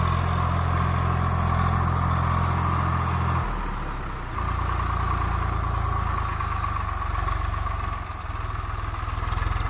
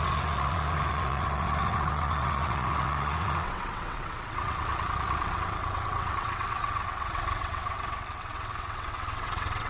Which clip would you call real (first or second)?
first